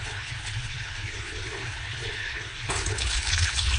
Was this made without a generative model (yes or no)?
no